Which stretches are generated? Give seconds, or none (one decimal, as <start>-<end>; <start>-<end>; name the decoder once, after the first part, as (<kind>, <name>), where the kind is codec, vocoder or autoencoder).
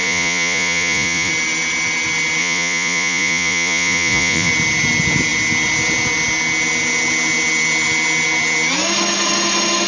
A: 0.0-1.3 (vocoder, Vocos); 2.4-4.5